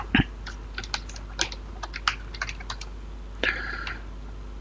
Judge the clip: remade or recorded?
recorded